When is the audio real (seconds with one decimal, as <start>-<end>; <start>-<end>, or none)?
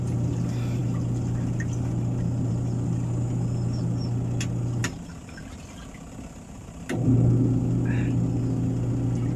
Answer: 0.0-9.4